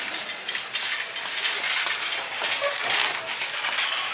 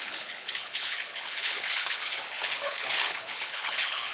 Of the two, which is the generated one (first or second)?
second